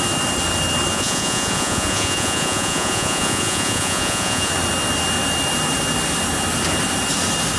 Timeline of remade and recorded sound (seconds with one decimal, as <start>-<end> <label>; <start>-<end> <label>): 0.0-0.9 recorded; 0.9-4.5 remade; 4.5-7.6 recorded